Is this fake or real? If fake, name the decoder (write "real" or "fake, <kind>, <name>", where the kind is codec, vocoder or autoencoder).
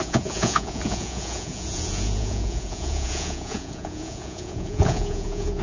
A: fake, vocoder, Vocos